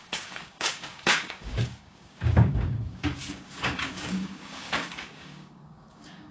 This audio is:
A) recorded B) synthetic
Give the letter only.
B